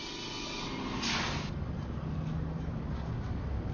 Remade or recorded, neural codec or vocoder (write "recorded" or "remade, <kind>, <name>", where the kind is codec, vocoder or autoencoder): recorded